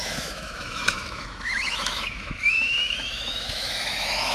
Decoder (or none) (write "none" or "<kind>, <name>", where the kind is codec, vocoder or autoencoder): autoencoder, DAC-VAE